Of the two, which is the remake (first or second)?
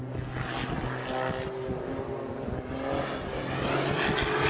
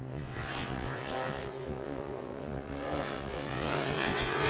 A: second